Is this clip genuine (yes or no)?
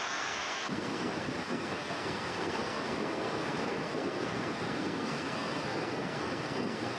no